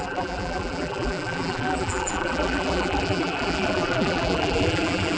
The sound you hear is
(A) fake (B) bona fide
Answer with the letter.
A